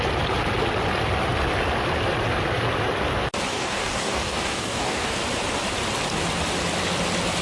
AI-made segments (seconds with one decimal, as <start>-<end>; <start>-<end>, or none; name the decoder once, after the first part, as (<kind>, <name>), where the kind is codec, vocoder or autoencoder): 3.5-5.1 (codec, DAC)